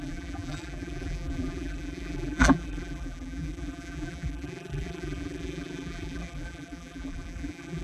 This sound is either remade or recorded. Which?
remade